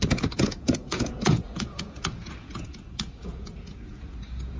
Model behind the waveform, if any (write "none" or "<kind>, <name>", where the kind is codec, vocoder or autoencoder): vocoder, Vocos